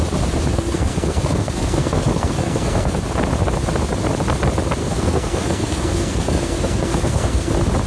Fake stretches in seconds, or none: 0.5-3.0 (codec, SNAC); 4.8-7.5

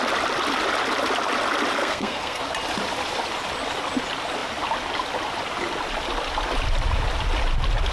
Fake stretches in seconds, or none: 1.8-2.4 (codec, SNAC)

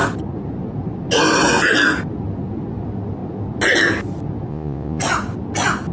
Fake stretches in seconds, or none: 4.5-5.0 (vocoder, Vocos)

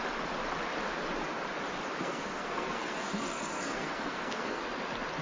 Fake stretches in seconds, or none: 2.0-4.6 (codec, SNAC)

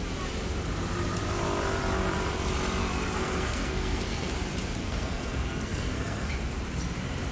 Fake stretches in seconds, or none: 2.8-4.3 (codec, SNAC); 4.8-6.3

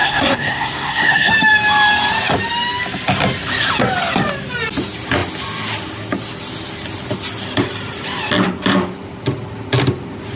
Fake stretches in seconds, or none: 0.0-1.3 (codec, SNAC)